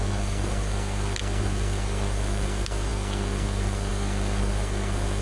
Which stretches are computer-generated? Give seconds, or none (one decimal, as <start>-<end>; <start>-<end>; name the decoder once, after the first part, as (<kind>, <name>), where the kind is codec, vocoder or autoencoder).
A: 0.0-5.2 (codec, SNAC)